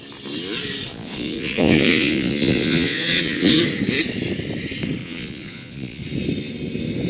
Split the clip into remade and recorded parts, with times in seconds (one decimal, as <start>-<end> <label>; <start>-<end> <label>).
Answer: 0.0-0.9 recorded; 0.9-3.6 remade; 3.6-5.0 recorded; 5.0-6.0 remade; 6.0-7.1 recorded